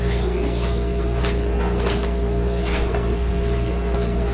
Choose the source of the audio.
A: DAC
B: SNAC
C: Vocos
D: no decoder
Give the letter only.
B